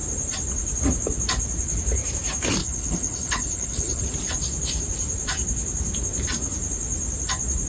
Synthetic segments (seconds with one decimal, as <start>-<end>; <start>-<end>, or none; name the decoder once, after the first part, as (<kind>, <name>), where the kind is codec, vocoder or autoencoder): 2.6-4.0 (codec, HILCodec)